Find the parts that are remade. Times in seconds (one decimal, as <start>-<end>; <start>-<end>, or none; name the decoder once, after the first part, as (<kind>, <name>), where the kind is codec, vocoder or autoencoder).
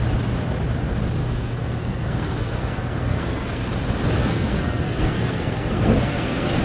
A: 1.2-3.7 (codec, SNAC); 4.2-6.6